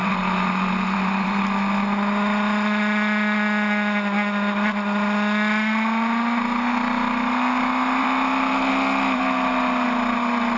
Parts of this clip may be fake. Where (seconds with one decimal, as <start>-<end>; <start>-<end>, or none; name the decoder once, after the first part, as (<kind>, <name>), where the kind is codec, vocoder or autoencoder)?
0.0-1.4 (vocoder, BigVGAN v2); 8.0-8.7